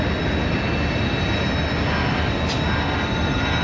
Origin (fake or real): real